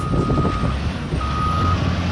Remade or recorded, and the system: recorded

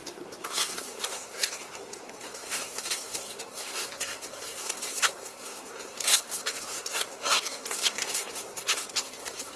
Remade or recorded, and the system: remade, codec, SNAC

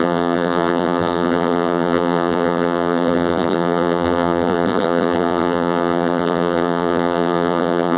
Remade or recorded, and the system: remade, vocoder, BigVGAN v2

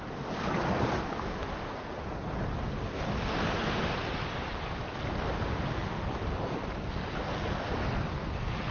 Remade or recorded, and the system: recorded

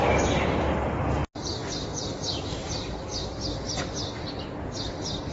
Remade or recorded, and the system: recorded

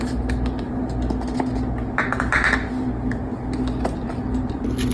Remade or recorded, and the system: recorded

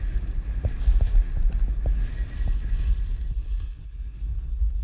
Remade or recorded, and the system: recorded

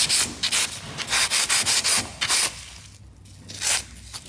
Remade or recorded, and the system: recorded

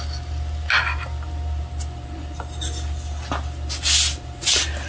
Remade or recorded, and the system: recorded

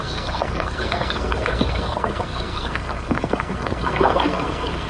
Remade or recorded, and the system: remade, codec, SNAC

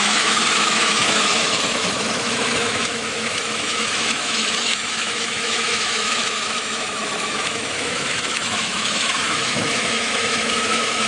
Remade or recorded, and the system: remade, autoencoder, DAC-VAE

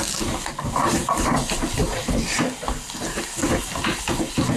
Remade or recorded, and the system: recorded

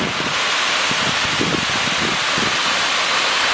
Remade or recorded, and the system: recorded